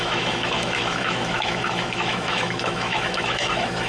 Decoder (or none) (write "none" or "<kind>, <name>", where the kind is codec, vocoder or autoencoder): autoencoder, DAC-VAE